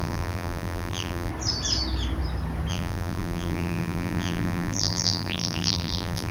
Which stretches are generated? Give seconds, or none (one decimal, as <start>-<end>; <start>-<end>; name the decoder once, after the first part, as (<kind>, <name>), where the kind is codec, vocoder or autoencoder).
0.0-1.3 (vocoder, BigVGAN v2); 2.7-6.3